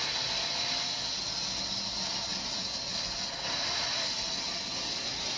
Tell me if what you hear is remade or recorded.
recorded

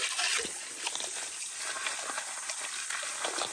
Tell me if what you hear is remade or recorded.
recorded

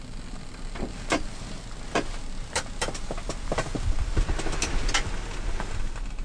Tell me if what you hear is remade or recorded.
recorded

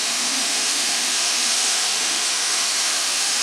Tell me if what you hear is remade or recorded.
remade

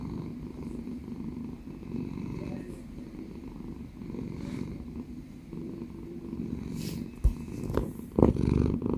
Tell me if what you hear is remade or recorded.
remade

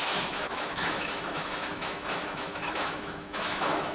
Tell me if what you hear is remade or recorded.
remade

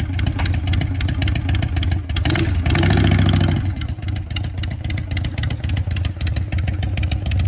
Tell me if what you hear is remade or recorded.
recorded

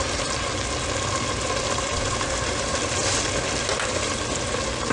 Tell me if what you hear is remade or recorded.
recorded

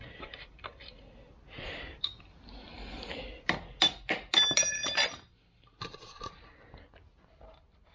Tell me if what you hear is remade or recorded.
recorded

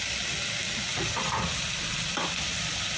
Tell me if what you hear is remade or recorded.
recorded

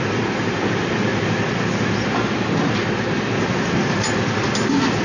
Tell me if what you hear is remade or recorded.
recorded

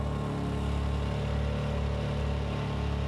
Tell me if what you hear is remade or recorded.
recorded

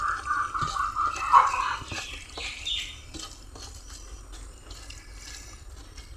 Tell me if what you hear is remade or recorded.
recorded